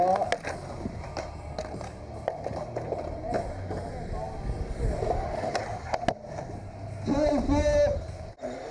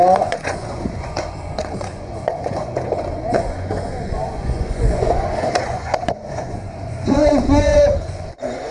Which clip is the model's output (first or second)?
second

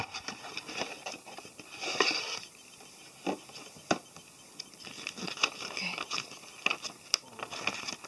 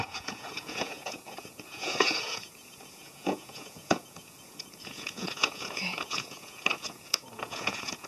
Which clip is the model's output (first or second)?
second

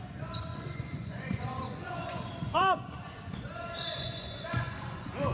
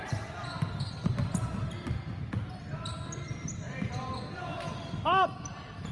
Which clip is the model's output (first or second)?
first